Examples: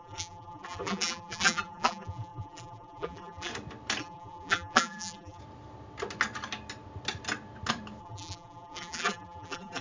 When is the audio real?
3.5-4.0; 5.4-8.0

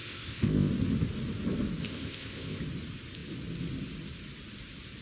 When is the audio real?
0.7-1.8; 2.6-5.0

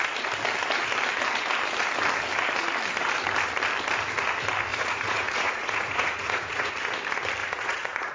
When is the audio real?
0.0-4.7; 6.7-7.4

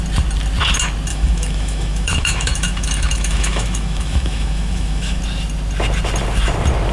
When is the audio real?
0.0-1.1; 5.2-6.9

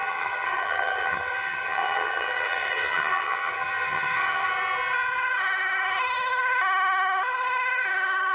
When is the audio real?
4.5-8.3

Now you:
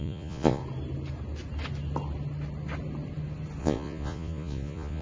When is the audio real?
0.6-3.6

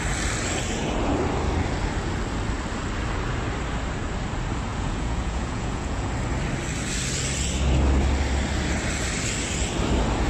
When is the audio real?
0.0-4.7; 6.1-10.3